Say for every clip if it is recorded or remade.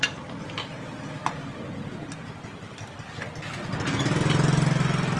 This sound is recorded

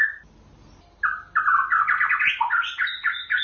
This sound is recorded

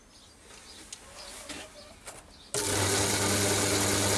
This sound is recorded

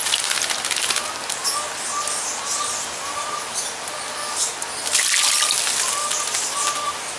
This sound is recorded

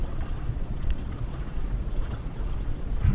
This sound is remade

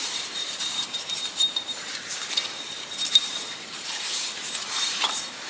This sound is remade